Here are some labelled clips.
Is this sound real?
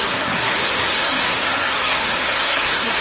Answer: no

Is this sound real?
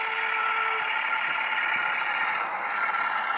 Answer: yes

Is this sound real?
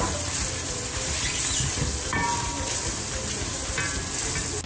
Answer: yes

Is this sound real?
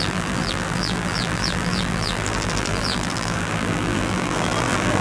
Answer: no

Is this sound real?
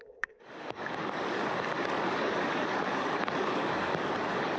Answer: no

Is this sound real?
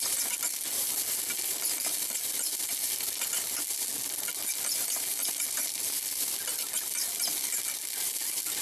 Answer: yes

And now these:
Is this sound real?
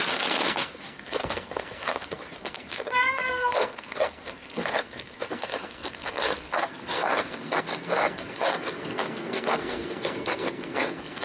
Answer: no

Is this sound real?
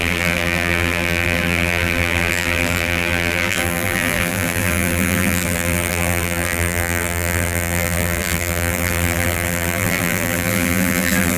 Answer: no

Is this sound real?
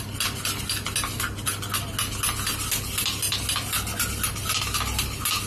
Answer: yes